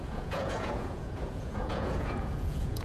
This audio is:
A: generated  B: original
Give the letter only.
A